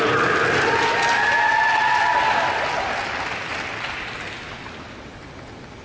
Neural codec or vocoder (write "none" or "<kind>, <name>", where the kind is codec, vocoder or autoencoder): none